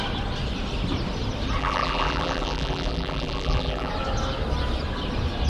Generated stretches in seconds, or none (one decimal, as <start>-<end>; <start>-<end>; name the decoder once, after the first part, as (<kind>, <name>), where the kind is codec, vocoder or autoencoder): 1.6-3.9 (vocoder, BigVGAN v2)